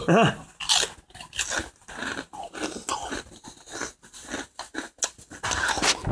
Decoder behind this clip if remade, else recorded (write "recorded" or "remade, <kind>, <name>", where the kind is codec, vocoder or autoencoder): recorded